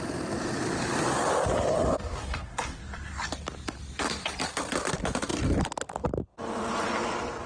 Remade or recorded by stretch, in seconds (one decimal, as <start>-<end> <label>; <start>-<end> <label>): 0.0-2.2 recorded; 2.2-2.8 remade; 2.8-7.5 recorded